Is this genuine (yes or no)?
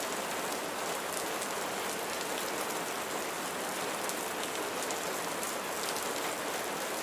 yes